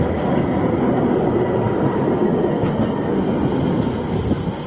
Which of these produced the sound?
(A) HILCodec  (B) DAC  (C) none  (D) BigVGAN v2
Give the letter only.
C